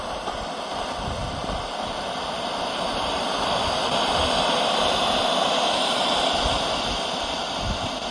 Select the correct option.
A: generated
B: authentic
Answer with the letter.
B